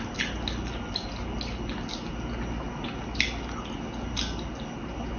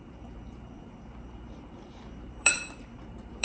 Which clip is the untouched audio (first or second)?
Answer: first